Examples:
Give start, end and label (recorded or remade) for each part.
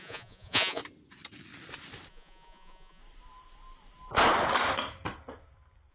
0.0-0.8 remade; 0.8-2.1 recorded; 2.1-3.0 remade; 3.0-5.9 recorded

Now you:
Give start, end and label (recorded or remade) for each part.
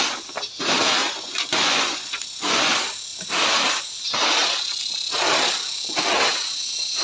0.0-1.0 recorded; 1.0-2.7 remade; 2.7-7.0 recorded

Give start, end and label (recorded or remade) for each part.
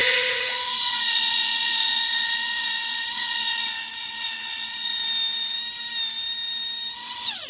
0.0-5.0 remade; 5.0-6.9 recorded; 6.9-7.5 remade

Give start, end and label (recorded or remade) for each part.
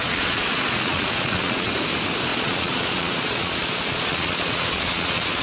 0.0-1.7 remade; 1.7-2.3 recorded; 2.3-5.4 remade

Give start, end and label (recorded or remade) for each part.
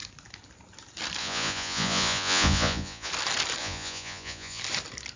0.0-1.2 recorded; 1.2-3.1 remade; 3.1-3.6 recorded; 3.6-4.6 remade; 4.6-5.2 recorded